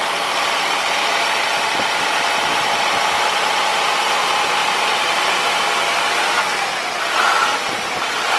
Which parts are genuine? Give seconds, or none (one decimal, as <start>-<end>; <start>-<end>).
0.0-4.6; 5.6-6.7; 7.3-8.4